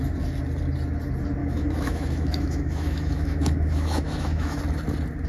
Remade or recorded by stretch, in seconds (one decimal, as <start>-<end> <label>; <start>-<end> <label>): 0.0-1.4 recorded; 1.4-4.6 remade; 4.6-5.3 recorded